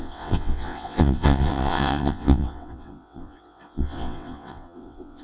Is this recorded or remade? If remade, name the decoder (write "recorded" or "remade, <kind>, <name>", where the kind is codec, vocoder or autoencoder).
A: remade, vocoder, WaveNeXt